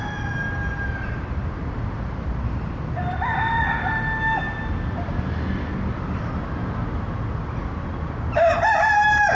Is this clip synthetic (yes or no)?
no